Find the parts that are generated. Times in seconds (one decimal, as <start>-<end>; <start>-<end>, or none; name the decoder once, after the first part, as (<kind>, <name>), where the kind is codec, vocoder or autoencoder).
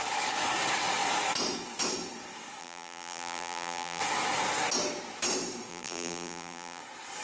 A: 2.6-4.0 (vocoder, BigVGAN v2); 5.7-6.8